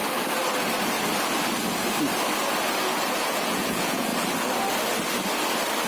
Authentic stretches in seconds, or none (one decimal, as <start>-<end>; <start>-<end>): 0.0-2.8; 4.1-5.9